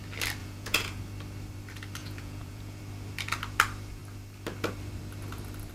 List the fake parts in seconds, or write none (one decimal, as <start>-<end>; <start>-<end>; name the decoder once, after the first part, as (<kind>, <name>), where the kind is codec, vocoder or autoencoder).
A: 0.4-1.0 (vocoder, Vocos); 2.0-2.8